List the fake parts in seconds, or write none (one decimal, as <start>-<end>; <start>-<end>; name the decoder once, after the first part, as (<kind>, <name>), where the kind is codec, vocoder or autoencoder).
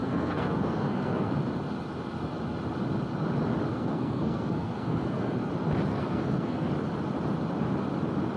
0.0-1.3 (codec, SNAC); 3.7-5.5; 5.9-6.7